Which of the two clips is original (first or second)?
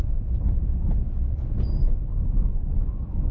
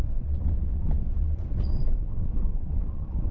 first